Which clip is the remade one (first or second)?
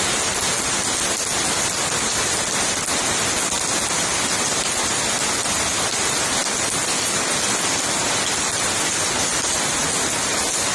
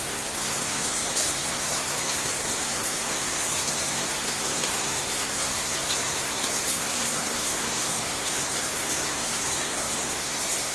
second